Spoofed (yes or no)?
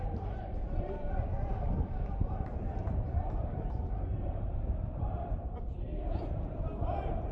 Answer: yes